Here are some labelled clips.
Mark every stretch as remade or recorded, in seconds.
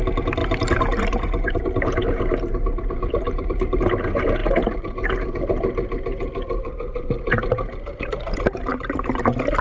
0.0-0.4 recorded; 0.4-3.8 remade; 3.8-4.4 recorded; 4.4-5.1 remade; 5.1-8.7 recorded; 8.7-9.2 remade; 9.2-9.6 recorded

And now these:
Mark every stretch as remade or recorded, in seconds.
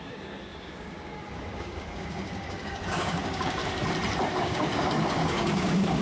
0.0-3.6 remade; 3.6-4.3 recorded; 4.3-6.0 remade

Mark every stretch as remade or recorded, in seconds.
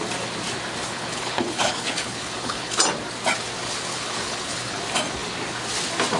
0.0-0.9 recorded; 0.9-2.8 remade; 2.8-3.9 recorded; 3.9-4.8 remade; 4.8-6.2 recorded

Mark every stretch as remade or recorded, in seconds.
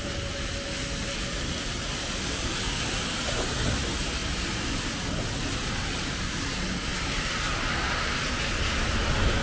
0.0-9.4 recorded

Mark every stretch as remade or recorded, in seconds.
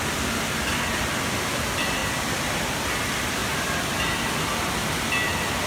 0.0-2.0 recorded; 2.0-2.8 remade; 2.8-3.4 recorded; 3.4-4.3 remade; 4.3-5.7 recorded